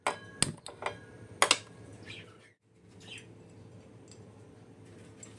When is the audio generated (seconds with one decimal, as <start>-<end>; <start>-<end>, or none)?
none